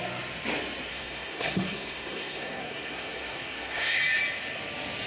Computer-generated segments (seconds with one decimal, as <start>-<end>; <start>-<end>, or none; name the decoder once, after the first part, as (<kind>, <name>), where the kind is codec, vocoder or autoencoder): 0.9-4.0 (codec, SNAC)